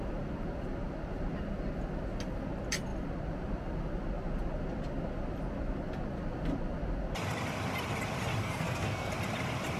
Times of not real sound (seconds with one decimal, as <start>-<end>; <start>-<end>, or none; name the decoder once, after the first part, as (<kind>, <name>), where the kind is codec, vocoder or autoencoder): 8.4-9.1 (codec, SNAC)